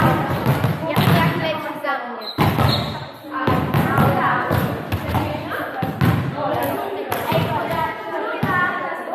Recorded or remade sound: recorded